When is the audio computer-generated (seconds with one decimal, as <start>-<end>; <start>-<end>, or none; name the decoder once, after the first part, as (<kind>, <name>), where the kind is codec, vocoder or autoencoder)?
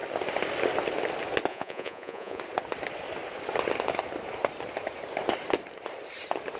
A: 1.5-2.4 (vocoder, Vocos)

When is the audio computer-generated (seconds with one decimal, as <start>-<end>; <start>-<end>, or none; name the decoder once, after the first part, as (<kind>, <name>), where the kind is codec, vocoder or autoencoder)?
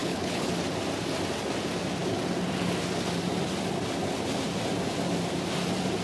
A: 0.0-0.5 (codec, HILCodec)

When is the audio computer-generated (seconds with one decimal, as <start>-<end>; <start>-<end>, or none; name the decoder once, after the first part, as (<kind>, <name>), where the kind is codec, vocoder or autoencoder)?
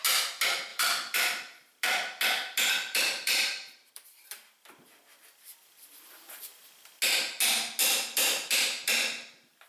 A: 0.7-3.9 (vocoder, BigVGAN v2); 7.8-9.7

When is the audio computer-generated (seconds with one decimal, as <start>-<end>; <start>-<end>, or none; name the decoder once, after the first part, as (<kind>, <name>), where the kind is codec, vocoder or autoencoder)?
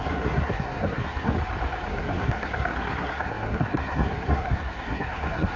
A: 0.0-1.3 (codec, SNAC); 1.9-5.6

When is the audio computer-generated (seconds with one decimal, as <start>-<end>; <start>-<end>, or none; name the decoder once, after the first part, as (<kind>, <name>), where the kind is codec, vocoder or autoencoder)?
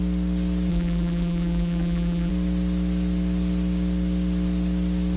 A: 0.7-2.3 (vocoder, BigVGAN v2)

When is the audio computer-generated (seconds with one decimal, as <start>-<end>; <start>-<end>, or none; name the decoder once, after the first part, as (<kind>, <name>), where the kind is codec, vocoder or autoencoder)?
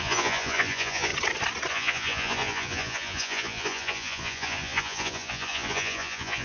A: 0.0-1.1 (vocoder, Vocos); 1.7-6.4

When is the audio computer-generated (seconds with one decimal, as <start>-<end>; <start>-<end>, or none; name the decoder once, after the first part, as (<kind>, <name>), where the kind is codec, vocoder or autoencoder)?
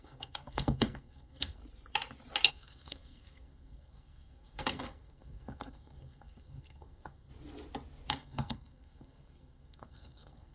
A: 0.0-1.6 (codec, SNAC); 2.5-7.3; 8.1-10.5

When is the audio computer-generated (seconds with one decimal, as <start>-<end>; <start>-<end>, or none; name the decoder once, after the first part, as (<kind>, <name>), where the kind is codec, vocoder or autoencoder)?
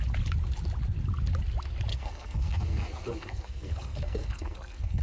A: 1.9-5.0 (codec, SNAC)